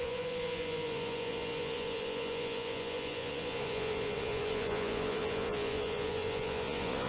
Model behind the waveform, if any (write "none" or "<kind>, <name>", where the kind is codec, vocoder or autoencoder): vocoder, Vocos